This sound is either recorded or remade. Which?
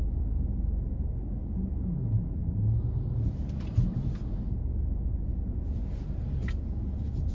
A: recorded